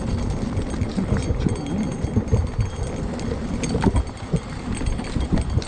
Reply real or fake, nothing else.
real